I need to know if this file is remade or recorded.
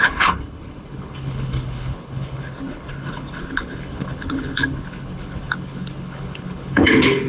remade